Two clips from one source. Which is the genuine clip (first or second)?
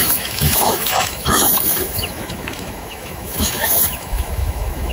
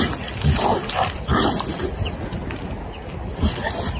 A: second